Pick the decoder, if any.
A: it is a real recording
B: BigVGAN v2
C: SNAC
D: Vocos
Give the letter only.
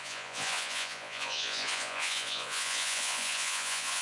D